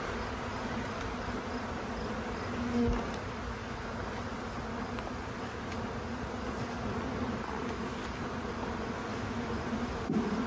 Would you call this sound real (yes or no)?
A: yes